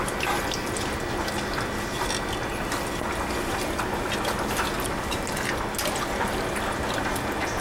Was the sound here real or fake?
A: real